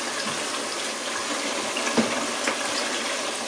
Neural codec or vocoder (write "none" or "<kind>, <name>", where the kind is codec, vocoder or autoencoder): none